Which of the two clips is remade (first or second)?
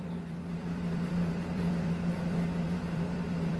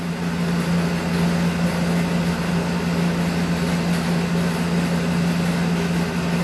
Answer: first